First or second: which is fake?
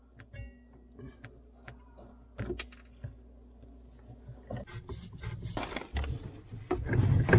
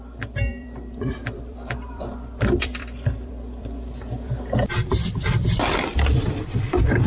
second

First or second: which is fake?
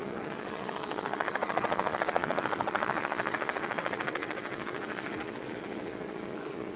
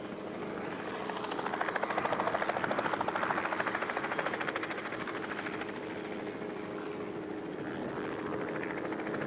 first